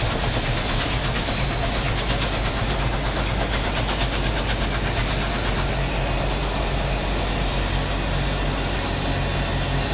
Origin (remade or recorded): recorded